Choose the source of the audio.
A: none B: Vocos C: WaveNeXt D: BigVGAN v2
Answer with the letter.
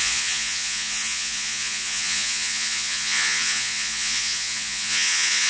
B